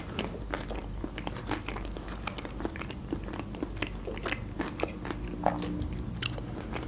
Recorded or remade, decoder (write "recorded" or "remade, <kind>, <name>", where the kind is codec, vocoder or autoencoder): recorded